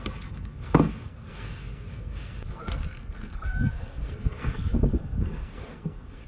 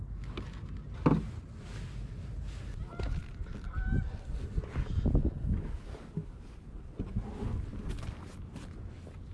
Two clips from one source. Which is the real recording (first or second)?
second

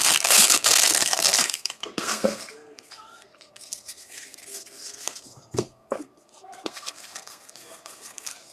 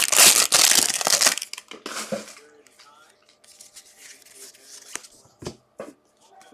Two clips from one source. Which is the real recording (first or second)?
second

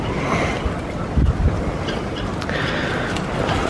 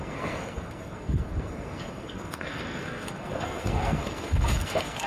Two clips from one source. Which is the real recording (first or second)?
first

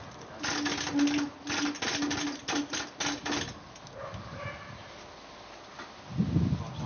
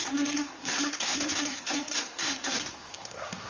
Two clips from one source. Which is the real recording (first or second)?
first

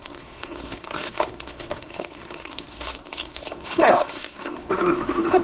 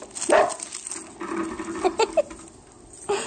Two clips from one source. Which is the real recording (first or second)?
second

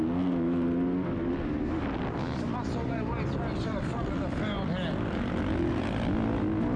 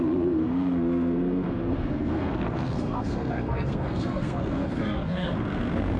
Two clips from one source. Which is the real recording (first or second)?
first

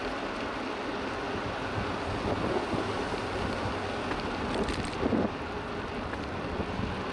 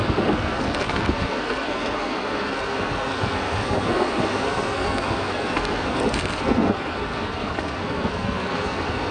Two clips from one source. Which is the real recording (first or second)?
first